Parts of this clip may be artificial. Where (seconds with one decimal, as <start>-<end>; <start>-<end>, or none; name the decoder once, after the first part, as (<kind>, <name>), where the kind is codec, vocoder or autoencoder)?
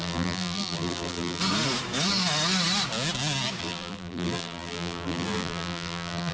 0.0-1.4 (vocoder, BigVGAN v2); 3.6-6.3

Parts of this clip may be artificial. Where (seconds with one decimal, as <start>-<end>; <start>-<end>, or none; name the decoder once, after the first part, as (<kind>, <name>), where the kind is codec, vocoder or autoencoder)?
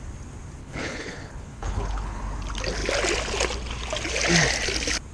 0.6-2.2 (codec, HILCodec)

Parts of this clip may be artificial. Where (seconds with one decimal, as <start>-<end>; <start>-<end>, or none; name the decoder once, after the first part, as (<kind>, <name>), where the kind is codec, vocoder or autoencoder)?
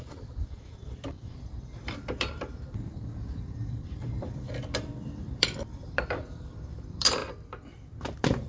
0.0-7.2 (vocoder, BigVGAN v2); 8.0-8.5